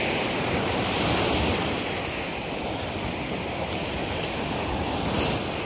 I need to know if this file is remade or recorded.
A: recorded